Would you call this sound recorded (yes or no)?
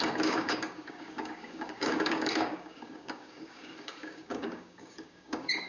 no